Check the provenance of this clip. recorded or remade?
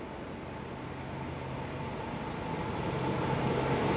recorded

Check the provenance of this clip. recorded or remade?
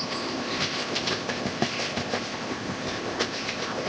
remade